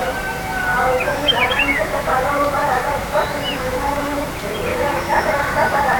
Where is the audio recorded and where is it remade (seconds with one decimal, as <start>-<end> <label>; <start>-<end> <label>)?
0.0-0.7 recorded; 0.7-4.3 remade; 4.3-4.7 recorded; 4.7-6.0 remade